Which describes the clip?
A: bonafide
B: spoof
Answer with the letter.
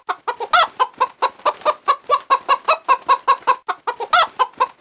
A